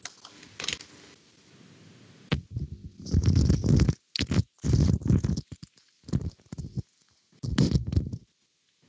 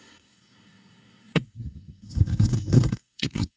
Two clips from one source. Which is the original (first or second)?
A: first